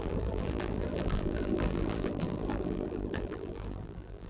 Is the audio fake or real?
fake